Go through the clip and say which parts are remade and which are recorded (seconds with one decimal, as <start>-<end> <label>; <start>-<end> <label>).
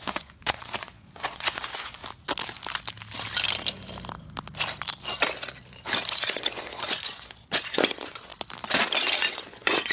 0.0-2.0 remade; 2.0-6.1 recorded; 6.1-8.3 remade; 8.3-9.2 recorded; 9.2-9.9 remade